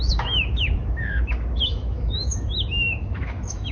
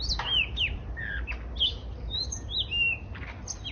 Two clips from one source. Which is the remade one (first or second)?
first